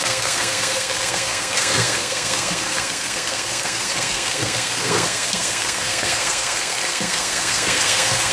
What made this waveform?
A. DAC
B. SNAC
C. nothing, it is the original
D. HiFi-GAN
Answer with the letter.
B